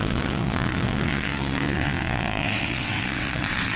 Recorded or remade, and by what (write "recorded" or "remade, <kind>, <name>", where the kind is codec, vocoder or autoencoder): remade, vocoder, WaveNeXt